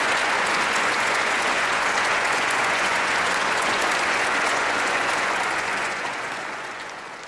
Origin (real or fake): fake